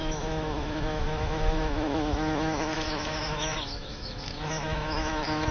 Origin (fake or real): fake